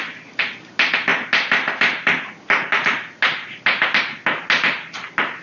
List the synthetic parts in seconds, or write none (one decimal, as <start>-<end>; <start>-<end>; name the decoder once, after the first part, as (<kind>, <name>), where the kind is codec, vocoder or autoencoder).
none